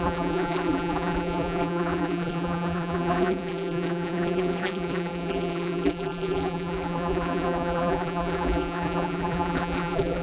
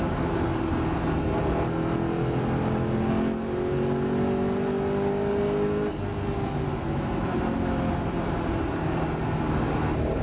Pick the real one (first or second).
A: second